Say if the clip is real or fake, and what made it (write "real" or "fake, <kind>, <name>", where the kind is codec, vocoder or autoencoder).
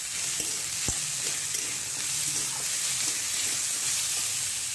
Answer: real